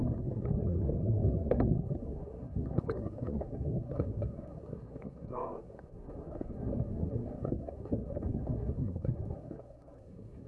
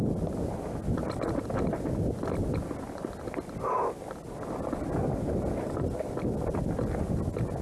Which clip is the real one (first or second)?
second